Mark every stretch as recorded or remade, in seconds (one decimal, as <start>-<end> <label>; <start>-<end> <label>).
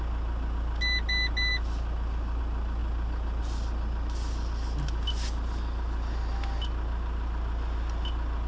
0.0-8.5 recorded